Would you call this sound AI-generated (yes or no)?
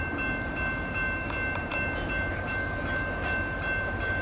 yes